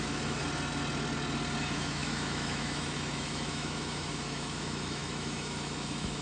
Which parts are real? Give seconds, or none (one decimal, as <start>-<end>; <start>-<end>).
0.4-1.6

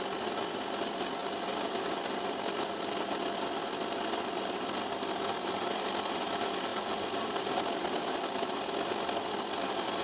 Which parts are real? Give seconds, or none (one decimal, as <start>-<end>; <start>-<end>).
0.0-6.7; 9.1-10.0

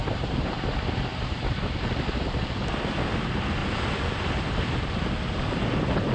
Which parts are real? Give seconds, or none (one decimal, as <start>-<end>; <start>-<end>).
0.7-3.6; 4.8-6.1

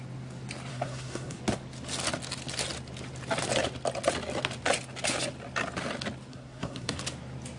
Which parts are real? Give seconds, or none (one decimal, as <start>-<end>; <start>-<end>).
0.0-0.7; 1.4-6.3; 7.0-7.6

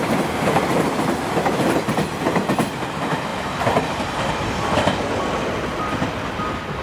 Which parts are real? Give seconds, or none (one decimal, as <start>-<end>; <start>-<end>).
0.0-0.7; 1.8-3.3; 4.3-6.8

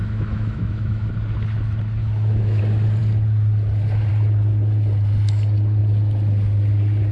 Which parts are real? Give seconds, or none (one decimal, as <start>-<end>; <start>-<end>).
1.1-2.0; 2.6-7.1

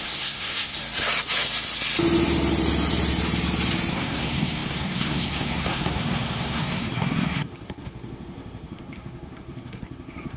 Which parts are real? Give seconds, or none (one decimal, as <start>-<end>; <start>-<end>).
0.8-3.9